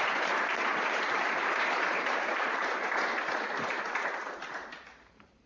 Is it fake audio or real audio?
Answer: fake